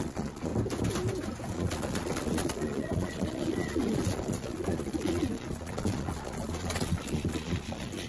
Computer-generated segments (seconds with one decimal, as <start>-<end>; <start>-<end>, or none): 0.0-0.5; 1.5-8.1

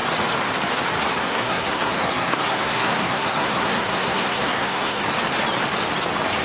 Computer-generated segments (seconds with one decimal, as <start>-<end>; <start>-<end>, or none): 1.2-5.0

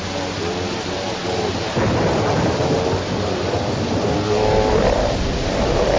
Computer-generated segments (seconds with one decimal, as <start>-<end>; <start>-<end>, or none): none